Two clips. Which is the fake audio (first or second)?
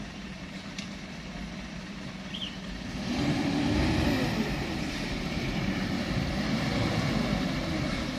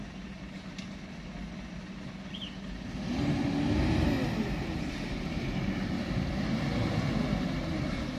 first